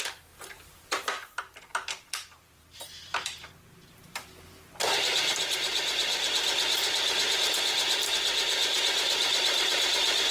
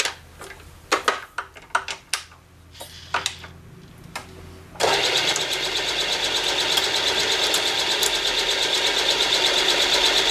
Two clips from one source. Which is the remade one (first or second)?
first